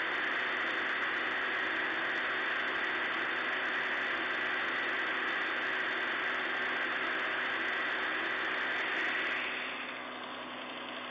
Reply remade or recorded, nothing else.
recorded